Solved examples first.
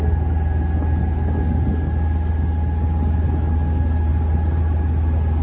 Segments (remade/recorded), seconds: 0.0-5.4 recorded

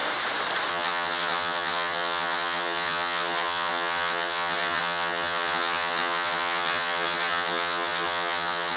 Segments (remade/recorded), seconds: 0.0-0.7 recorded; 0.7-8.8 remade

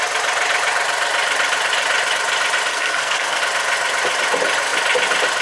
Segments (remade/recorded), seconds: 0.0-2.7 recorded; 2.7-3.4 remade; 3.4-5.4 recorded

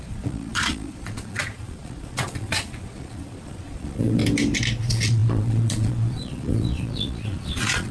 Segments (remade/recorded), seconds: 0.0-4.2 remade; 4.2-4.8 recorded; 4.8-7.9 remade

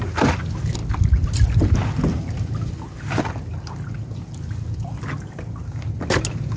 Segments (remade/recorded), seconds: 0.0-6.6 recorded